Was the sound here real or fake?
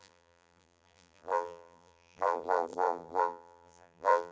fake